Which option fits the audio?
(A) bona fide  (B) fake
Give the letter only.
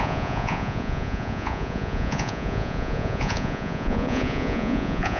B